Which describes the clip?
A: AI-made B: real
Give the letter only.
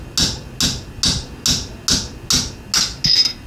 B